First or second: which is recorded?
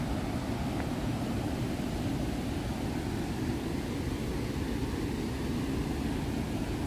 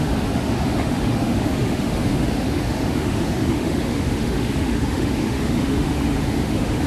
first